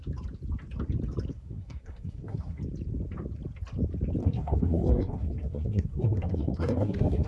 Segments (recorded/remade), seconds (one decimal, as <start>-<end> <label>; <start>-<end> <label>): 0.0-1.3 recorded; 1.3-2.6 remade; 2.6-4.2 recorded; 4.2-7.3 remade